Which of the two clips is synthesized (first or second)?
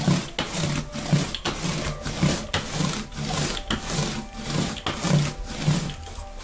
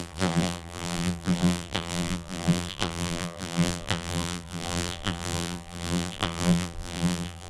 second